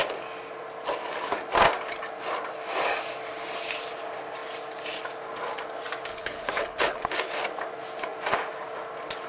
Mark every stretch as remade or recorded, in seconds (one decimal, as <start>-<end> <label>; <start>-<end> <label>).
0.0-6.1 recorded; 6.1-7.0 remade; 7.0-9.3 recorded